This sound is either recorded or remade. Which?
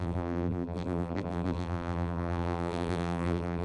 remade